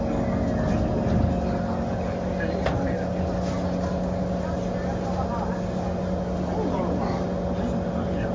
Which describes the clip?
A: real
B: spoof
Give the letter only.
A